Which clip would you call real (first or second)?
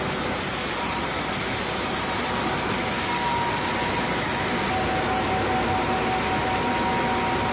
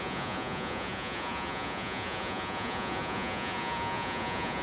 first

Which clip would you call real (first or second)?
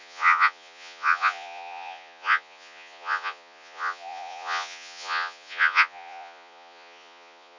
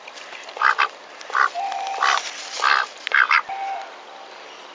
second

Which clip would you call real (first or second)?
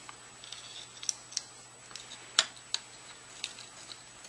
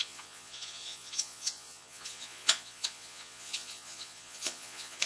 first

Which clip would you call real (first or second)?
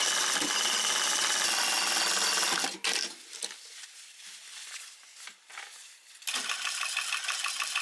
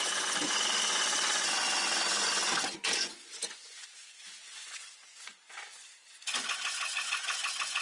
first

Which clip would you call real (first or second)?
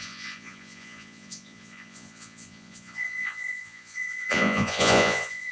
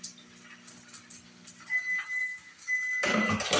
second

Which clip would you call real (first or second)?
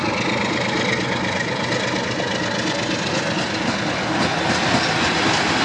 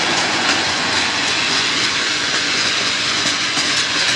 first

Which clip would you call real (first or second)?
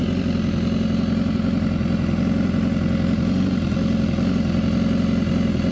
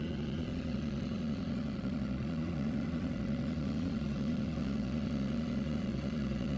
first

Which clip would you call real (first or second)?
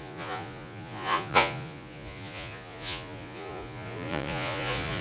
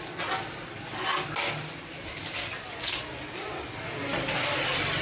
second